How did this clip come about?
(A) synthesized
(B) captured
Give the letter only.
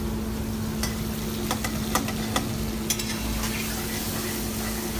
B